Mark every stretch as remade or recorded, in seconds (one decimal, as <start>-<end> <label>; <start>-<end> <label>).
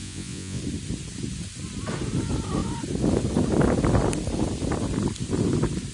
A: 0.0-0.6 remade; 0.6-5.9 recorded